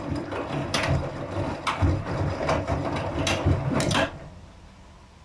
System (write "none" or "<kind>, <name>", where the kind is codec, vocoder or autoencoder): none